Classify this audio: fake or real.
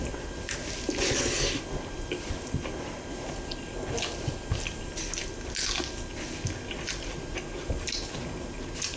real